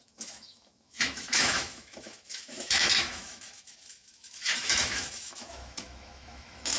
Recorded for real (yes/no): no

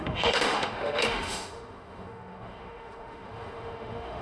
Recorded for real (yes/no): no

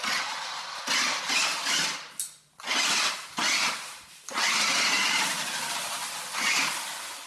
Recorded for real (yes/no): yes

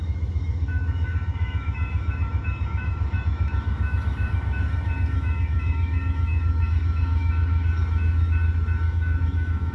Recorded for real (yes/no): no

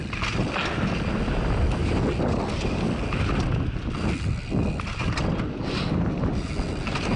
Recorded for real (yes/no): yes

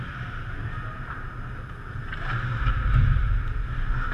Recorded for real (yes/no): yes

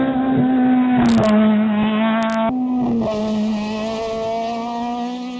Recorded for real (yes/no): yes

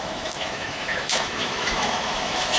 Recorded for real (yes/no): no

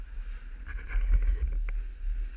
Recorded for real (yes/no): yes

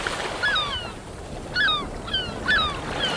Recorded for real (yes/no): yes